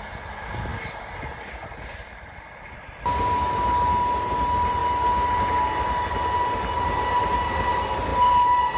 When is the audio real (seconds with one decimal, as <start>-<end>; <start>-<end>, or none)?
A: 0.0-8.8